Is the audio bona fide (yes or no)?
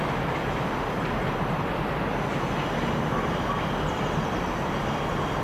yes